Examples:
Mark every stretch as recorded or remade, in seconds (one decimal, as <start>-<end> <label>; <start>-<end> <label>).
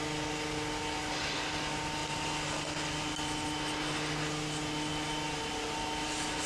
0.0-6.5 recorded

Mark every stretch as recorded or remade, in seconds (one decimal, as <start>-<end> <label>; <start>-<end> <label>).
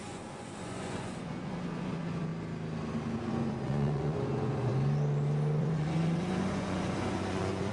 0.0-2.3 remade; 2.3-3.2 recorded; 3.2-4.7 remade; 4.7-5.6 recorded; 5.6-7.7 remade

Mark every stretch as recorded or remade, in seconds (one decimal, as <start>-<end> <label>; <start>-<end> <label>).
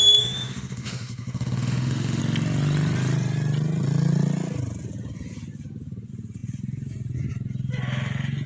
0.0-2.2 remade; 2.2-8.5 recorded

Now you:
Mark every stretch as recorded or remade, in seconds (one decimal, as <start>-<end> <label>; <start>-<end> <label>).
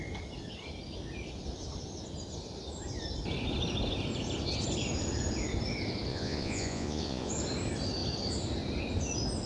0.0-6.1 recorded; 6.1-7.3 remade; 7.3-9.5 recorded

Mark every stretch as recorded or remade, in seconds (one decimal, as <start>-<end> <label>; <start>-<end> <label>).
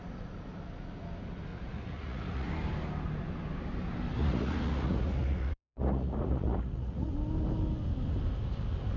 0.0-1.5 recorded; 1.5-2.5 remade; 2.5-4.2 recorded; 4.2-7.1 remade; 7.1-9.0 recorded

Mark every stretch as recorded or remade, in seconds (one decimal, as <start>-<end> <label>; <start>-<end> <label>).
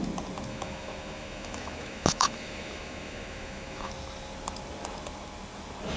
0.0-0.5 recorded; 0.5-3.9 remade; 3.9-6.0 recorded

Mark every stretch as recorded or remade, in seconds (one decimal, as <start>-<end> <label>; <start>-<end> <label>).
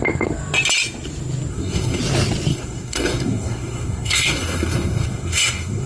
0.0-1.5 recorded; 1.5-2.0 remade; 2.0-2.5 recorded; 2.5-5.9 remade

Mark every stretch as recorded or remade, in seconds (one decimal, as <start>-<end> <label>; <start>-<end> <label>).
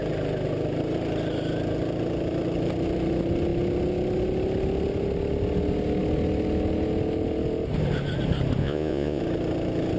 0.0-8.6 recorded; 8.6-9.2 remade; 9.2-10.0 recorded